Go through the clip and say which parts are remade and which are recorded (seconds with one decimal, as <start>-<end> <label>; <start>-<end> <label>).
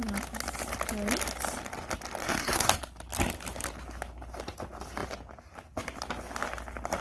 0.0-2.2 recorded; 2.2-2.8 remade; 2.8-7.0 recorded